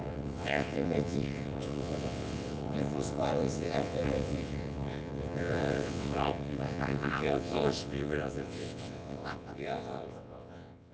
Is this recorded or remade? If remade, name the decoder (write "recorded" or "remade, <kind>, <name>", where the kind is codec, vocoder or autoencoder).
remade, vocoder, WaveNeXt